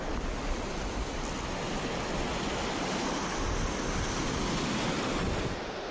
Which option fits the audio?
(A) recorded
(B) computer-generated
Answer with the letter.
A